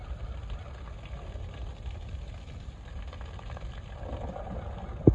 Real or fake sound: real